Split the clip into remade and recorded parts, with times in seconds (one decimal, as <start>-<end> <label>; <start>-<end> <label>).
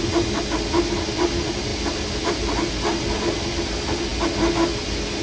0.0-5.2 recorded